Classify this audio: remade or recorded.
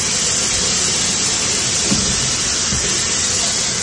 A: recorded